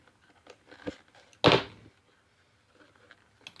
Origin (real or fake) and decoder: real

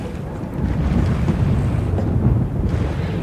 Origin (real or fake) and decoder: real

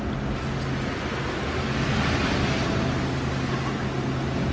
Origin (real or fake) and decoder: real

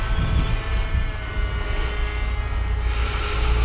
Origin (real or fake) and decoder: real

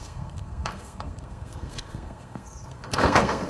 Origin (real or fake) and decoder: fake, codec, SNAC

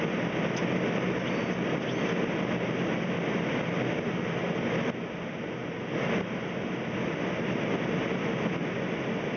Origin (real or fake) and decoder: real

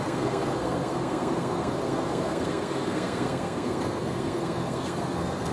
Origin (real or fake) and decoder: fake, codec, SNAC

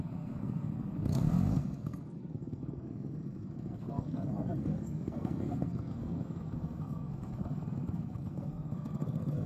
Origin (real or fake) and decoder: fake, codec, SNAC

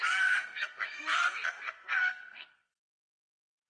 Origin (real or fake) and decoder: fake, codec, SNAC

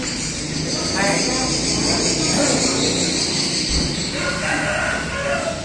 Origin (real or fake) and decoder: real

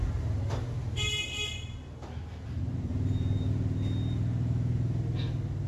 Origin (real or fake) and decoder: real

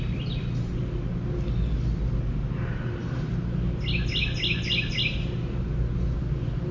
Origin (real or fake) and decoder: real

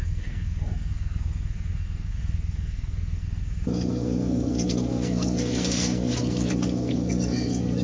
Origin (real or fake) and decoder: fake, codec, SNAC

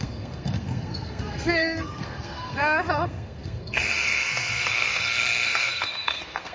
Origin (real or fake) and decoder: fake, codec, SNAC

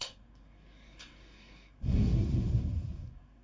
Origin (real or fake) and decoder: fake, codec, SNAC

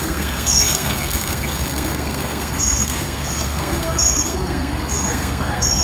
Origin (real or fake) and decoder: fake, codec, SNAC